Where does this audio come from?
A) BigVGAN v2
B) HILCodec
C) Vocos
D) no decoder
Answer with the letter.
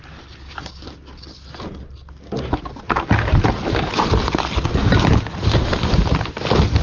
D